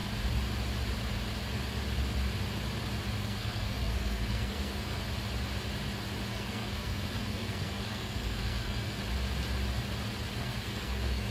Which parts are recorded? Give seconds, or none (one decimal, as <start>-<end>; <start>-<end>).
0.0-3.2; 5.0-6.3; 9.0-10.4